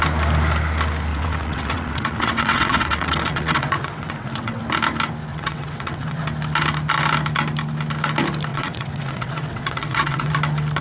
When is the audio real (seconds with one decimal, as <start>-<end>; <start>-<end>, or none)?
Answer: 0.0-1.1; 4.6-5.3; 6.2-8.5; 10.3-10.8